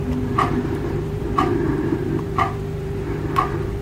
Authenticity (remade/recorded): remade